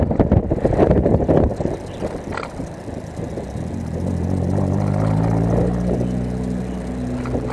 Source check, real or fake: real